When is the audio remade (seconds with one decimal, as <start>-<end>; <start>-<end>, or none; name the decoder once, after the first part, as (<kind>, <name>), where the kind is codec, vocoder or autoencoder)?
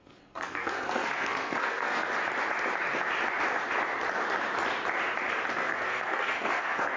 0.0-2.1 (codec, SNAC); 5.5-7.0